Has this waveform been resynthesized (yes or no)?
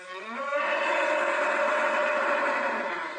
yes